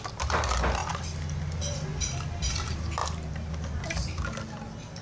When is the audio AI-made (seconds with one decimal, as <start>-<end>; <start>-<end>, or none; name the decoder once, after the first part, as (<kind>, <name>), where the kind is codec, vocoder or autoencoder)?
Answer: 3.0-3.5 (vocoder, BigVGAN v2)